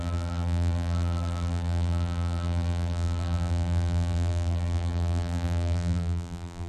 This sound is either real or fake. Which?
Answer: fake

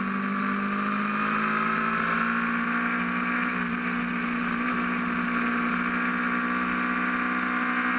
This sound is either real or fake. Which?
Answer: real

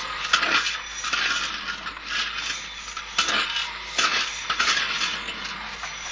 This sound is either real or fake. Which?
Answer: real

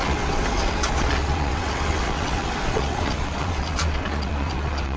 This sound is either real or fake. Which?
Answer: fake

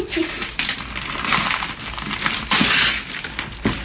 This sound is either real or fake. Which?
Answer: real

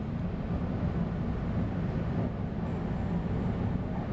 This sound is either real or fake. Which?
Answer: real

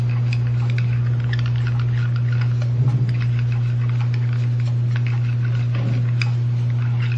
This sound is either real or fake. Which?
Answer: real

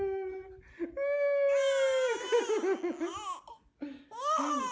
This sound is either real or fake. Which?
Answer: real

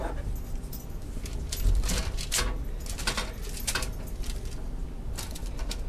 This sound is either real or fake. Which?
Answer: real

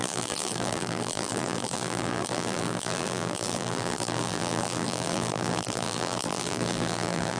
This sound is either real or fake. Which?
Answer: fake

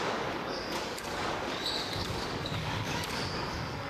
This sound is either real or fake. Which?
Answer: fake